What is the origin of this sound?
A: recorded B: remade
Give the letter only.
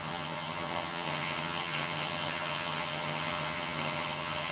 B